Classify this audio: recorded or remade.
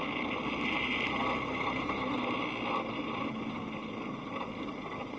recorded